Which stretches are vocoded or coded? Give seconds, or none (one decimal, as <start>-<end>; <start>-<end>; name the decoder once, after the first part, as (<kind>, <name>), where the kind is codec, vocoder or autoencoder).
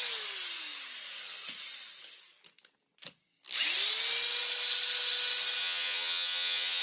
5.6-6.8 (vocoder, HiFi-GAN)